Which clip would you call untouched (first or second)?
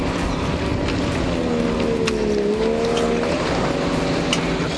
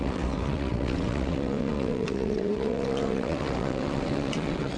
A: first